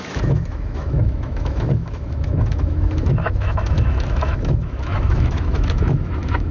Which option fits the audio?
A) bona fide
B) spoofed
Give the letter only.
B